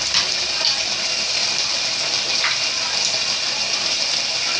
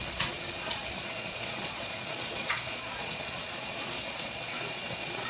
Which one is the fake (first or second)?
second